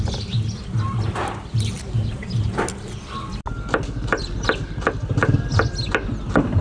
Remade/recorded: recorded